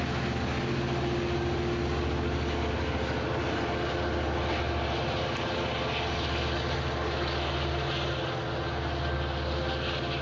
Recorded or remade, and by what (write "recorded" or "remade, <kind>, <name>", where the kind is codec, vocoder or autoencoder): recorded